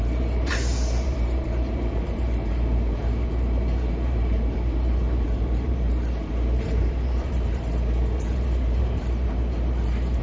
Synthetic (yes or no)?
yes